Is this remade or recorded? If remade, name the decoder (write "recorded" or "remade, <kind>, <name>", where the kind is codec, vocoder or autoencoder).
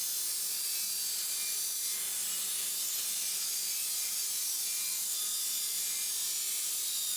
recorded